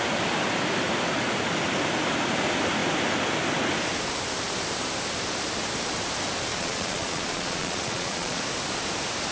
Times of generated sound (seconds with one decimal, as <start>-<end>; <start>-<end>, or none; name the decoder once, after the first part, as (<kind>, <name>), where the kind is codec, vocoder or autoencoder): 6.5-8.4 (vocoder, Vocos)